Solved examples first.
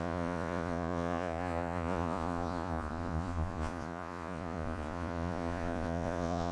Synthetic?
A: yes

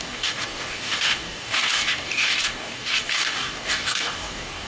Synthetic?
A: yes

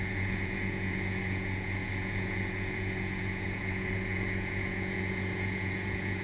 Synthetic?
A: yes